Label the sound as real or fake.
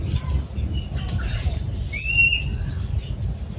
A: real